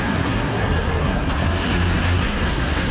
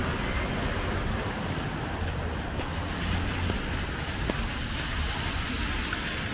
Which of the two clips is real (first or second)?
second